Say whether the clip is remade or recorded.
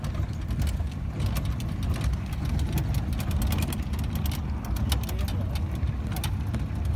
recorded